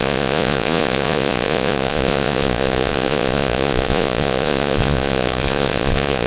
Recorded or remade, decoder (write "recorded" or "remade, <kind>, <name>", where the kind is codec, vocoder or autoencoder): remade, vocoder, Vocos